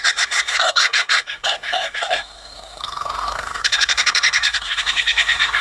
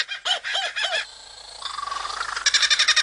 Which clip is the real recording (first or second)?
second